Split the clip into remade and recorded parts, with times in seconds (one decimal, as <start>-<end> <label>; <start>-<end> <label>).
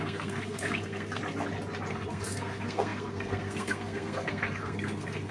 0.0-1.2 remade; 1.2-1.9 recorded; 1.9-5.3 remade